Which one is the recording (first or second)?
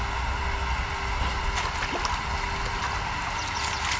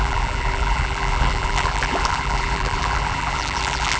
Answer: first